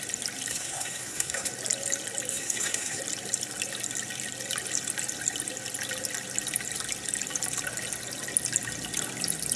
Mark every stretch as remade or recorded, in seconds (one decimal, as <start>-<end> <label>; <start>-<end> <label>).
0.0-0.5 recorded; 0.5-1.5 remade; 1.5-2.3 recorded; 2.3-3.0 remade; 3.0-9.6 recorded